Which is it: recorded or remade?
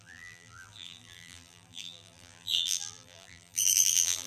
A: remade